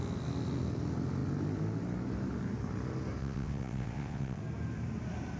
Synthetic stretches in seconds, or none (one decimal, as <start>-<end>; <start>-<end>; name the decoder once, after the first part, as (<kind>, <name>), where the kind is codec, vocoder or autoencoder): 3.2-4.4 (vocoder, WaveNeXt)